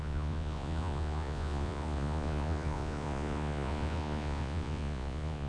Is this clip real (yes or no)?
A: no